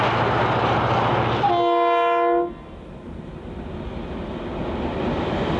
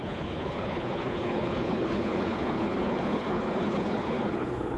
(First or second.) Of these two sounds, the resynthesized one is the second